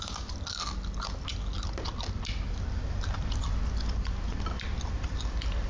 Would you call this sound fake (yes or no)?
no